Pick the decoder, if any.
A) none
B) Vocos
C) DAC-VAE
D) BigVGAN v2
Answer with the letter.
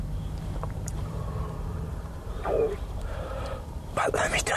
D